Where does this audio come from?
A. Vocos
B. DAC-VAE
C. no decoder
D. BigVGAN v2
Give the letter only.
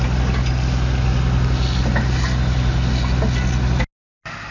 C